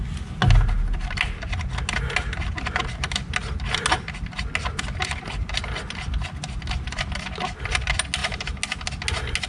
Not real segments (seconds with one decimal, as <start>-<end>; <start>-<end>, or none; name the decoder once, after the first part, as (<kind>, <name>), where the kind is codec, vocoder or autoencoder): none